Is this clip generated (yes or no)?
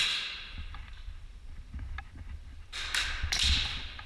no